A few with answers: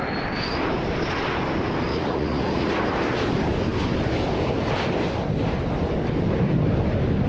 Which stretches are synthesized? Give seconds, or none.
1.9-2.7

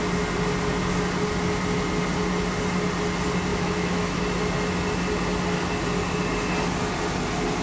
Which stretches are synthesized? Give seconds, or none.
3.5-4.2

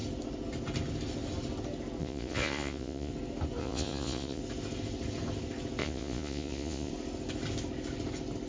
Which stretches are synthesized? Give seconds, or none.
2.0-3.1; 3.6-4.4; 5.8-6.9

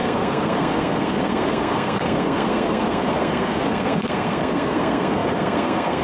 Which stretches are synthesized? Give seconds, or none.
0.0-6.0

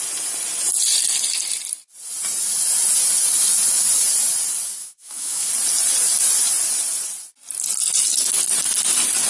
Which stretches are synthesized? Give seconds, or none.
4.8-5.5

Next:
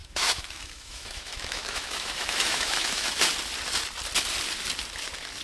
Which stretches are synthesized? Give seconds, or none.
0.0-3.2